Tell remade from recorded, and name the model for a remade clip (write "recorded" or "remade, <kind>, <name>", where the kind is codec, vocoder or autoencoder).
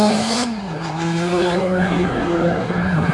remade, codec, SNAC